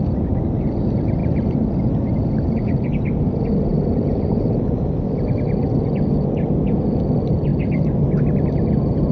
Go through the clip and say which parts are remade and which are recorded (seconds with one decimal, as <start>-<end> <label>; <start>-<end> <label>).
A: 0.0-9.1 recorded

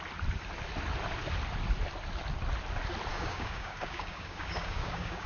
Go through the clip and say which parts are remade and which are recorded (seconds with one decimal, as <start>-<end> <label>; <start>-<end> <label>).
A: 0.0-3.1 recorded; 3.1-5.3 remade

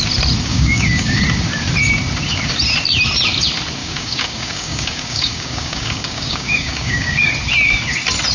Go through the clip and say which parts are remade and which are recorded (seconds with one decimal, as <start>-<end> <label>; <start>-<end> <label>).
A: 0.0-0.5 recorded; 0.5-1.2 remade; 1.2-3.8 recorded; 3.8-7.3 remade; 7.3-8.3 recorded